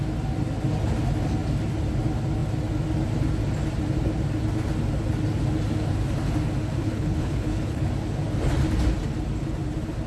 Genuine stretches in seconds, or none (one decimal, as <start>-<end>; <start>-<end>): 0.0-6.8; 7.9-10.1